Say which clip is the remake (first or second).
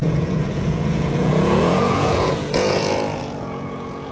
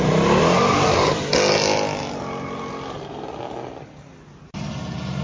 first